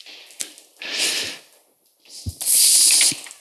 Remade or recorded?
recorded